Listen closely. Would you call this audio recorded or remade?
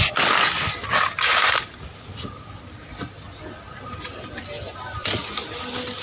recorded